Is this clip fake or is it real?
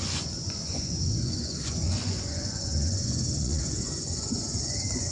fake